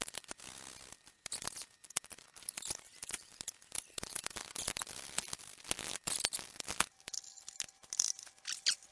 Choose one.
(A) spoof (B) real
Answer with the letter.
B